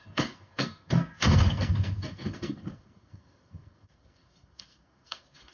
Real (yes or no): no